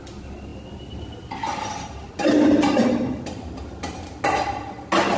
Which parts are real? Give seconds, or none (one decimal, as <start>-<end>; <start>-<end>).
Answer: 0.0-5.2